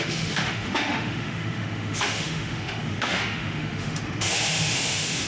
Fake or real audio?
fake